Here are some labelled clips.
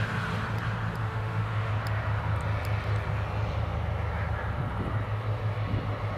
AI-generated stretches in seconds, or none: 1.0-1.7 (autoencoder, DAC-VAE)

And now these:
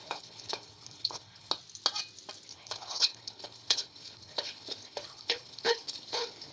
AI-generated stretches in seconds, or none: 0.0-1.5 (codec, HILCodec); 2.5-6.5

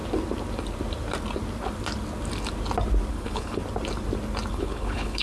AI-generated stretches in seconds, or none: 3.1-3.6 (codec, HILCodec); 4.5-5.2

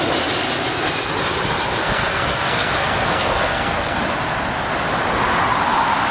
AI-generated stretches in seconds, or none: 1.8-4.0 (codec, SNAC)

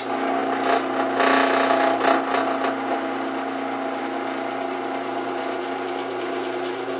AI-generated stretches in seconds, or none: none

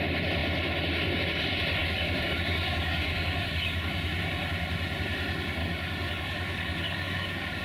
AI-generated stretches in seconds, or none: 1.8-3.9 (codec, DAC); 5.6-7.6